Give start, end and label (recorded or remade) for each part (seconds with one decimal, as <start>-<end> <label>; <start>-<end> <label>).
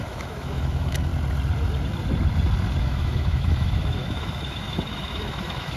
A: 0.0-1.1 remade; 1.1-2.8 recorded; 2.8-5.8 remade